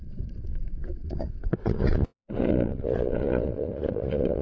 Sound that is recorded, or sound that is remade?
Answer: remade